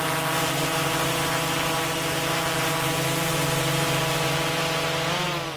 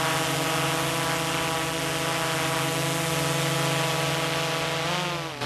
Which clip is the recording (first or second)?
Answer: second